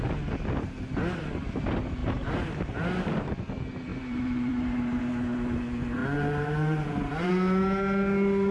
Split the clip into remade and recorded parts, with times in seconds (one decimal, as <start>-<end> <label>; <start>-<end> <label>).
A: 0.0-2.0 recorded; 2.0-2.6 remade; 2.6-3.9 recorded; 3.9-5.0 remade; 5.0-6.0 recorded; 6.0-7.3 remade; 7.3-8.5 recorded